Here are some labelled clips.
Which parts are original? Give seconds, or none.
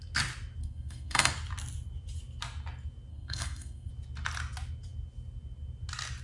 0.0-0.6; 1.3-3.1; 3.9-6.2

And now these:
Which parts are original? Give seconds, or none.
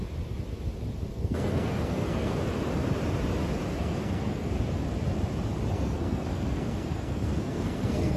0.0-1.1; 2.4-3.8; 4.5-5.7